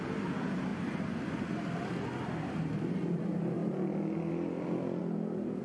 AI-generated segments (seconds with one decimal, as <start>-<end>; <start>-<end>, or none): 0.0-0.7; 3.2-3.6; 4.3-5.6